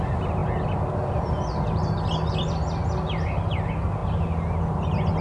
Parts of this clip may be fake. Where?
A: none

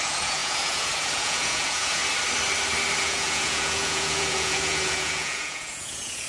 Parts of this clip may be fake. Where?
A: 0.0-2.0 (vocoder, Vocos); 3.0-6.3

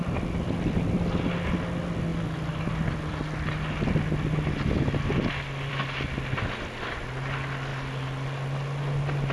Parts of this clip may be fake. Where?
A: none